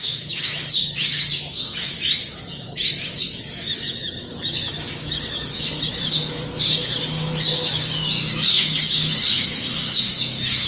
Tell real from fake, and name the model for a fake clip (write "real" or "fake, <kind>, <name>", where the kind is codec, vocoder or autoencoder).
fake, autoencoder, DAC-VAE